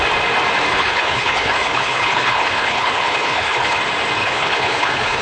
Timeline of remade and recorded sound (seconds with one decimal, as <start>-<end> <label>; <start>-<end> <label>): 0.0-0.7 recorded; 0.7-3.8 remade; 3.8-4.2 recorded; 4.2-5.2 remade